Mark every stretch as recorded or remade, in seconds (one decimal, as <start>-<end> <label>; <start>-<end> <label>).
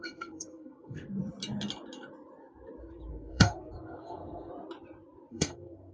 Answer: 0.0-1.2 remade; 1.2-2.9 recorded; 2.9-4.5 remade; 4.5-5.3 recorded; 5.3-5.9 remade